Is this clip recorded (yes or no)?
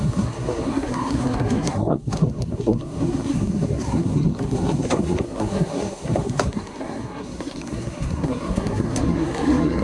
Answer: no